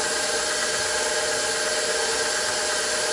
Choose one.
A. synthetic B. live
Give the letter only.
B